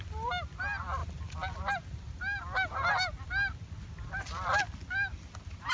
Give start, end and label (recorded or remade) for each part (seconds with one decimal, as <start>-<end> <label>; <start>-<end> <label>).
0.0-5.7 recorded